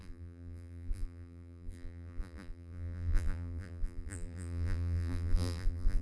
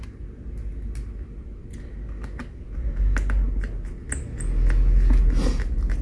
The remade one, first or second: first